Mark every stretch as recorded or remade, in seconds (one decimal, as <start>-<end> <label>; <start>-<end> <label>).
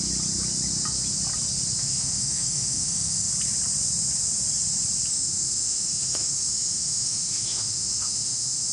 0.0-1.8 recorded; 1.8-3.3 remade; 3.3-5.1 recorded; 5.1-8.7 remade